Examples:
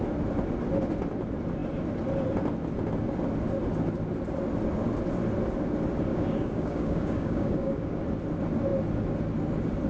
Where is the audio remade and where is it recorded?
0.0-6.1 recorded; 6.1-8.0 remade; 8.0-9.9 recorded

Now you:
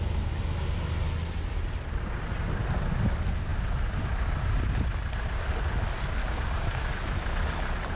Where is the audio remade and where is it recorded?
0.0-6.2 recorded; 6.2-6.9 remade; 6.9-8.0 recorded

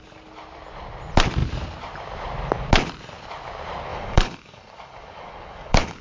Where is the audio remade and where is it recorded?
0.0-3.9 recorded; 3.9-6.0 remade